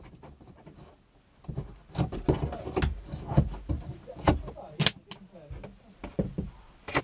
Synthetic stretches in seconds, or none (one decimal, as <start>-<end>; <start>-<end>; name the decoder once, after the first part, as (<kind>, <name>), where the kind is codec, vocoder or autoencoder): none